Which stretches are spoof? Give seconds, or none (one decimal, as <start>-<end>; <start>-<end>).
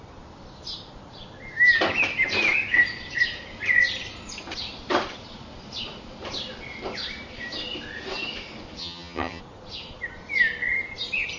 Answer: 8.8-9.4